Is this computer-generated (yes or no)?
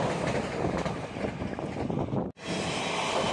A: no